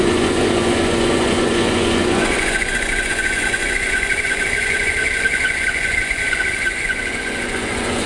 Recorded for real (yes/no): no